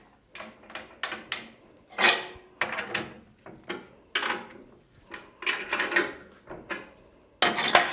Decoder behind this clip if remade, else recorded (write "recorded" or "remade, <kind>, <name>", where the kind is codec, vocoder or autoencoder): recorded